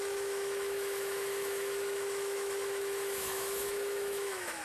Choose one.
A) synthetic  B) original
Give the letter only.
A